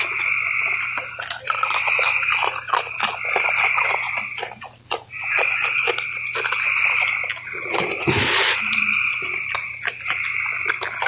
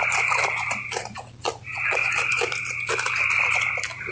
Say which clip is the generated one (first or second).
second